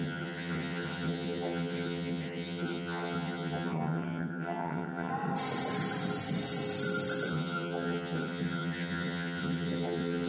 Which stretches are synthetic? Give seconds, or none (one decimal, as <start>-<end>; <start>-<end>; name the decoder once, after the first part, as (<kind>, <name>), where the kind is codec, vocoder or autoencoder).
0.0-5.1 (vocoder, HiFi-GAN); 7.3-10.3